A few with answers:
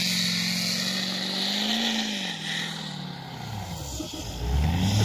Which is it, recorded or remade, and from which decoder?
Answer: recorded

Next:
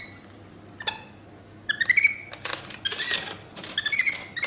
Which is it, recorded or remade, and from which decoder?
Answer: recorded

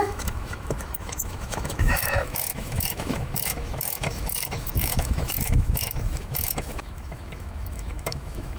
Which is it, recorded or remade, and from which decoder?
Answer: remade, autoencoder, DAC-VAE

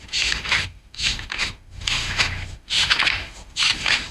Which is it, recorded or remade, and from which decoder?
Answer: remade, autoencoder, DAC-VAE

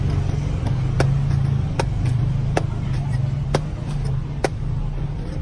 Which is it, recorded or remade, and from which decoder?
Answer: recorded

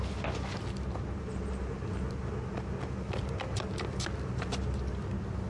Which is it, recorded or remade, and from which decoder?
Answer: recorded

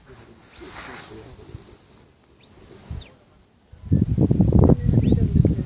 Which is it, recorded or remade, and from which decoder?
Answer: recorded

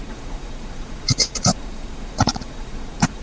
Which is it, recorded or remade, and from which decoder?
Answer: remade, vocoder, Vocos